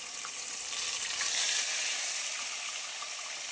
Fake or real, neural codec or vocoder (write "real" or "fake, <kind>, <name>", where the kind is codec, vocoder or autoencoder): fake, vocoder, BigVGAN v2